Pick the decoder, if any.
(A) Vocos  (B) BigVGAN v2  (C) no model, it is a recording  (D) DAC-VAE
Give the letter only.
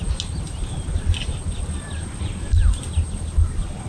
C